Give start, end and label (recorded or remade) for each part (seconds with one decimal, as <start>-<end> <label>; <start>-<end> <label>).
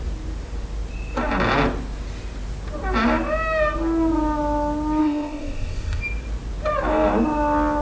0.0-5.0 recorded; 5.0-6.0 remade; 6.0-7.8 recorded